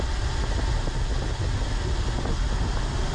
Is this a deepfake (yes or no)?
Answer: no